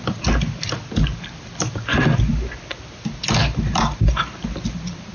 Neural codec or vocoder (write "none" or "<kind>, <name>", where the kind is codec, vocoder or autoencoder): none